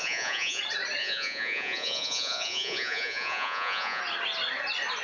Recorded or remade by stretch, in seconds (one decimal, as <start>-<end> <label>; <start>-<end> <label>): 0.0-0.6 remade; 0.6-1.0 recorded; 1.0-4.0 remade; 4.0-5.0 recorded